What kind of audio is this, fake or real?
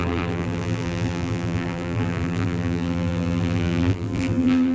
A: fake